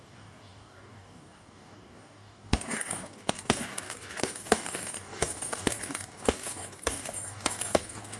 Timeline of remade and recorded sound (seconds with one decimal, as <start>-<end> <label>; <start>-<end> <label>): 0.0-8.2 remade

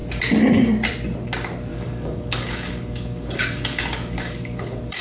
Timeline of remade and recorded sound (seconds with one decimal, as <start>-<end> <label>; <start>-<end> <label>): 0.0-1.7 recorded; 1.7-5.0 remade